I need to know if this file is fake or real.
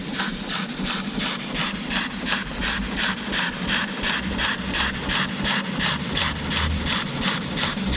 fake